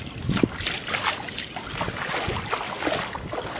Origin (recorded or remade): recorded